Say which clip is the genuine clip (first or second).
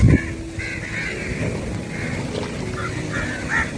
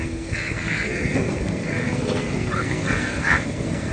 first